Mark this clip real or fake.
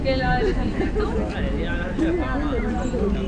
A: real